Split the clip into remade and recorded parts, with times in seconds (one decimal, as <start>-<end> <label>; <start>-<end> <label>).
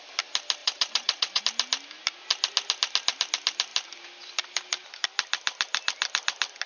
0.0-0.6 recorded; 0.6-1.4 remade; 1.4-6.7 recorded